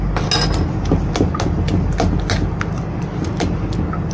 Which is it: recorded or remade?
recorded